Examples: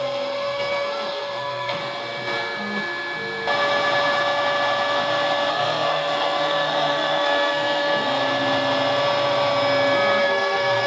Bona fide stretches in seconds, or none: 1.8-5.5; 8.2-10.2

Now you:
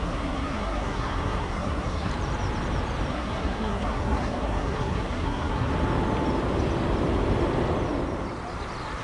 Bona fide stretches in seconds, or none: 2.1-3.1; 5.7-9.0

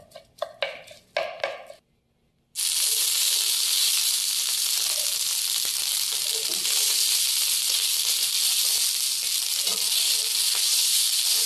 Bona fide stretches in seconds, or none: 0.0-11.5

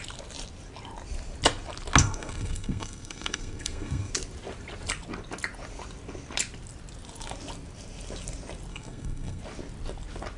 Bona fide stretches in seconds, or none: 0.0-2.0; 4.1-8.7; 9.4-10.4